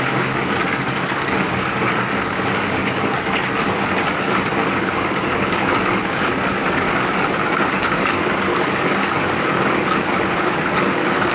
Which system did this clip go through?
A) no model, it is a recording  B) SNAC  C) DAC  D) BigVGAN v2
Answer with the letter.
C